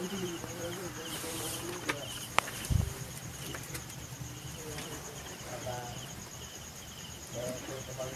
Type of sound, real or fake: fake